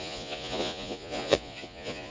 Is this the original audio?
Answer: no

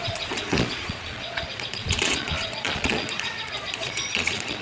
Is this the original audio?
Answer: no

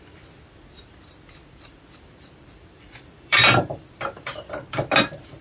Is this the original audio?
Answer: no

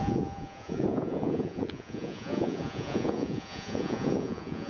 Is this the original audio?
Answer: no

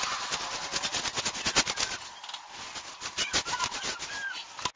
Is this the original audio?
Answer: yes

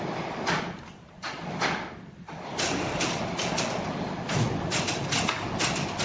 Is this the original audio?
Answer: yes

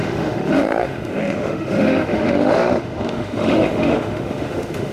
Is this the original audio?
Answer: no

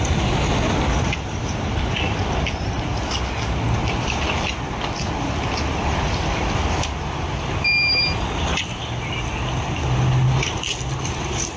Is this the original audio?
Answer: yes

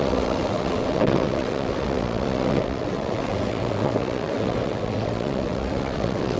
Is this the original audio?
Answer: no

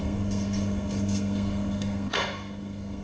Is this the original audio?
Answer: no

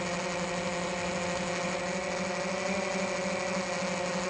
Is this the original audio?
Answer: yes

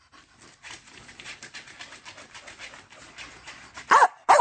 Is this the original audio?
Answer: yes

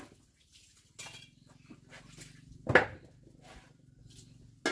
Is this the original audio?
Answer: yes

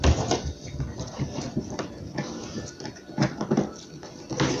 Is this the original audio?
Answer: yes